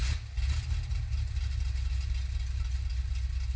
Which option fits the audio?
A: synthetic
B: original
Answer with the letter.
B